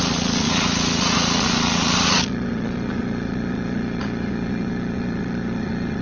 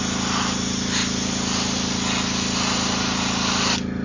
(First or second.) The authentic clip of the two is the second